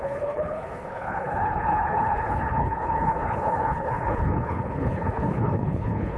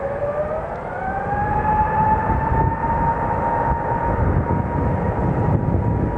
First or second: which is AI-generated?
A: first